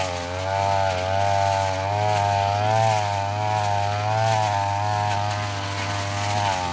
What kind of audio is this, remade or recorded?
recorded